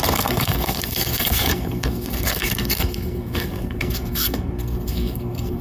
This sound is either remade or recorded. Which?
remade